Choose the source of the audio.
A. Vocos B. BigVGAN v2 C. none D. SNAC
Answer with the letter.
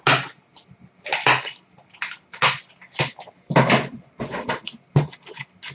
C